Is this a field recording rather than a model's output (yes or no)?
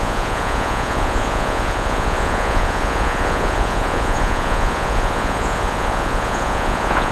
no